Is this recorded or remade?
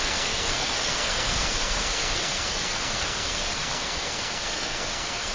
remade